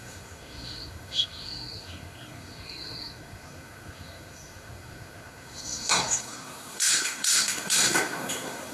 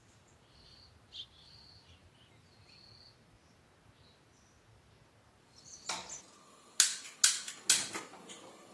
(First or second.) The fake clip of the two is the first